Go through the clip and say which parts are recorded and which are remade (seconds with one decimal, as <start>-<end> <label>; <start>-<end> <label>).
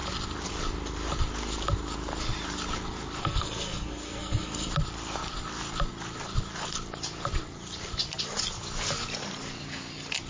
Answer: 0.0-3.2 recorded; 3.2-4.7 remade; 4.7-10.3 recorded